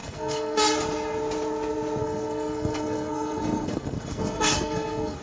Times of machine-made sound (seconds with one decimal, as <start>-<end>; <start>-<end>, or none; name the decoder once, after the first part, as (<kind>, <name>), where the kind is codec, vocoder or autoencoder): 0.0-0.6 (codec, SNAC); 2.0-5.2